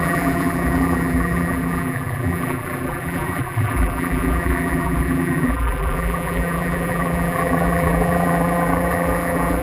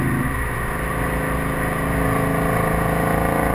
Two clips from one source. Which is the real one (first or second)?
second